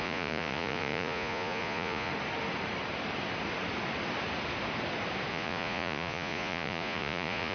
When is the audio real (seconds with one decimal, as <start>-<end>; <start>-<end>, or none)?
2.1-5.3